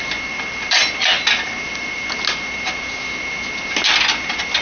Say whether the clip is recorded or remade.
recorded